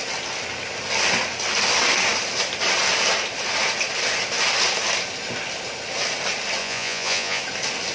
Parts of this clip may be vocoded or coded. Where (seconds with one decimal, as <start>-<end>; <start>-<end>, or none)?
6.6-7.4